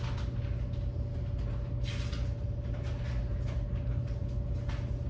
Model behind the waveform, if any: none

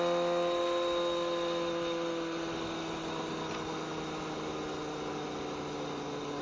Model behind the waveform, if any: none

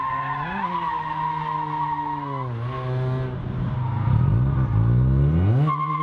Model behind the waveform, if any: none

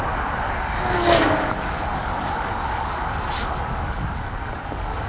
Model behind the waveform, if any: codec, DAC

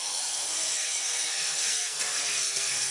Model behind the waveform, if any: codec, SNAC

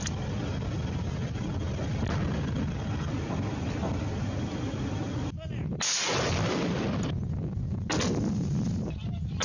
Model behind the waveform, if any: none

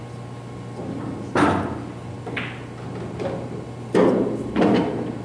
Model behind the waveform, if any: none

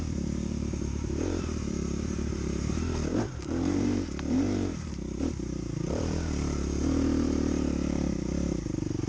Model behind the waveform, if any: vocoder, BigVGAN v2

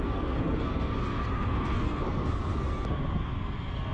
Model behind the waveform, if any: codec, SNAC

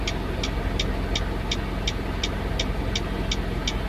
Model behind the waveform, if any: none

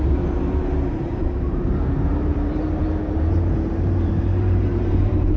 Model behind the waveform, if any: vocoder, BigVGAN v2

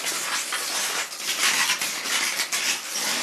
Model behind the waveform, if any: none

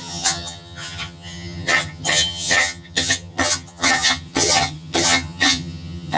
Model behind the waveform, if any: vocoder, HiFi-GAN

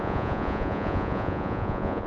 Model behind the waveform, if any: vocoder, Vocos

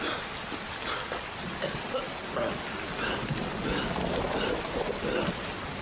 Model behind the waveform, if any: none